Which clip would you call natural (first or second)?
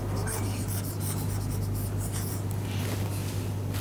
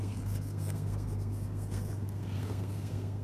first